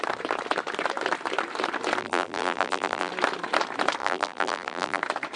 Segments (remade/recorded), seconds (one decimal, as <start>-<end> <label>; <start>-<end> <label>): 0.0-2.0 recorded; 2.0-3.1 remade; 3.1-4.0 recorded; 4.0-5.0 remade; 5.0-5.4 recorded